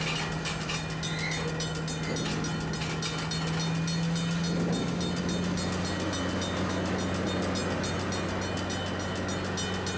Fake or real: real